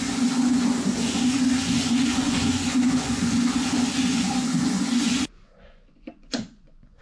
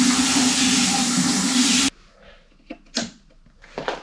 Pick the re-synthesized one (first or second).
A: first